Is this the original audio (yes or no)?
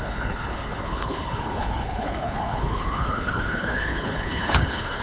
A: no